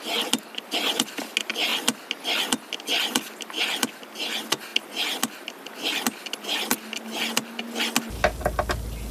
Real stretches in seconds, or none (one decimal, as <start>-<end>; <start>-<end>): 0.0-9.1